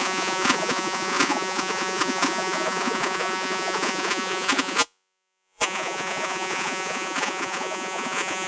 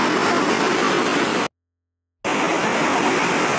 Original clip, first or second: second